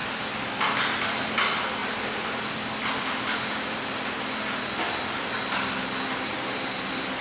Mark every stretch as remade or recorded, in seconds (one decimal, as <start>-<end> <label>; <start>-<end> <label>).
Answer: 0.0-7.2 recorded